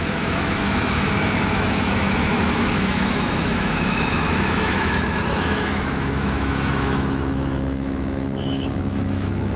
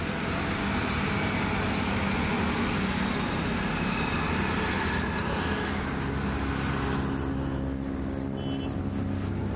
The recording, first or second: second